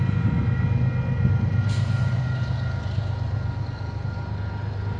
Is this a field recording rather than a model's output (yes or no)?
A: yes